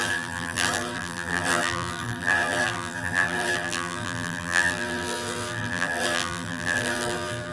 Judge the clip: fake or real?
fake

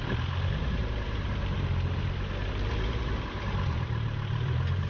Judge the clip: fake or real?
fake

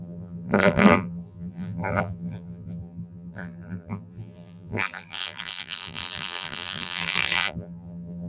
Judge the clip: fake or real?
fake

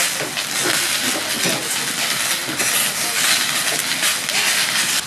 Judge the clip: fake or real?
real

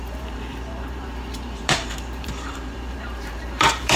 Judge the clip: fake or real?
fake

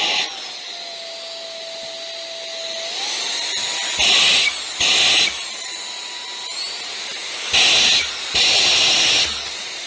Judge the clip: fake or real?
real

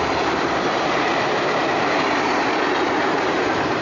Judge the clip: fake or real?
fake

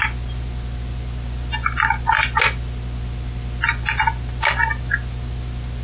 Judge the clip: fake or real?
real